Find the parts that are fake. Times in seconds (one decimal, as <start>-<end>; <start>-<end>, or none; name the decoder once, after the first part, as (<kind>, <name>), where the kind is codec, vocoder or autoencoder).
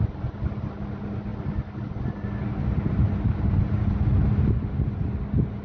none